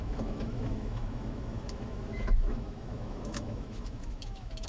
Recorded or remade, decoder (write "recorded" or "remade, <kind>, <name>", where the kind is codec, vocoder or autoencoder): remade, autoencoder, DAC-VAE